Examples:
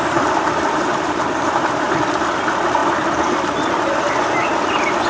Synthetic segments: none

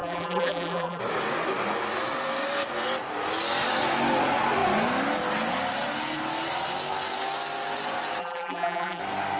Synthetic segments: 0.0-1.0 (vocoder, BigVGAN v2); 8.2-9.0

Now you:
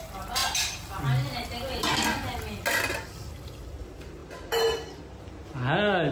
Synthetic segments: none

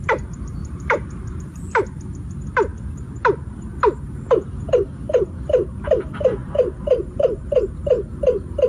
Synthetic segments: 0.6-1.4 (vocoder, BigVGAN v2); 6.4-7.6